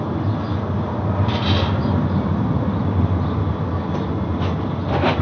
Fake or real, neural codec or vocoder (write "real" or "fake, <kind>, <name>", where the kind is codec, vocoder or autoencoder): real